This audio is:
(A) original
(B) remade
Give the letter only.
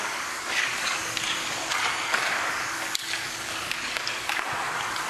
B